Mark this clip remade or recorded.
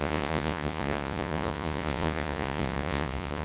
remade